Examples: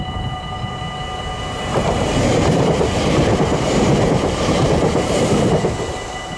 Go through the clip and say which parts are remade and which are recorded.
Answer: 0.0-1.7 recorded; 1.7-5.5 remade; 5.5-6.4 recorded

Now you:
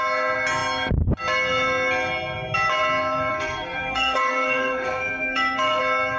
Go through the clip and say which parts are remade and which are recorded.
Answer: 0.0-3.3 recorded; 3.3-5.8 remade; 5.8-6.2 recorded

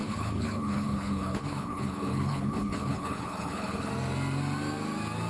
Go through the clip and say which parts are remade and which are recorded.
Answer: 0.0-3.9 remade; 3.9-5.3 recorded

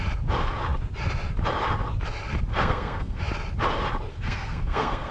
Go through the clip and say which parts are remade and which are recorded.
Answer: 0.0-2.5 recorded; 2.5-3.2 remade; 3.2-4.1 recorded; 4.1-5.1 remade

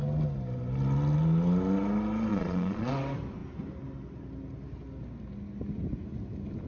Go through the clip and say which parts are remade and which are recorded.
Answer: 0.0-2.3 recorded; 2.3-2.9 remade; 2.9-6.7 recorded

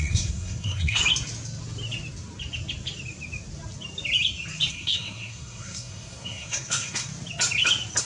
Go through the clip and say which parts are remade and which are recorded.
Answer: 0.0-1.0 remade; 1.0-4.7 recorded; 4.7-7.1 remade; 7.1-8.0 recorded

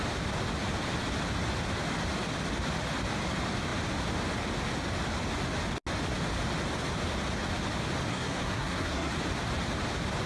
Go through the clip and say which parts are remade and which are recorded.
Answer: 0.0-8.1 recorded; 8.1-9.1 remade; 9.1-10.3 recorded

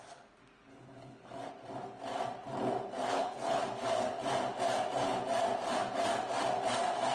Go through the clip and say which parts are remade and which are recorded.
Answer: 0.0-0.7 recorded; 0.7-1.5 remade; 1.5-3.0 recorded; 3.0-3.6 remade; 3.6-7.1 recorded